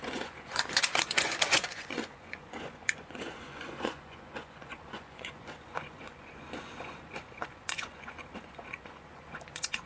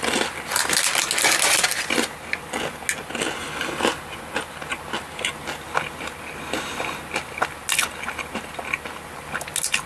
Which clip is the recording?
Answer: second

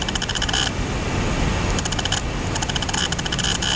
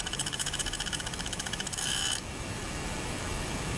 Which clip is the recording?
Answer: first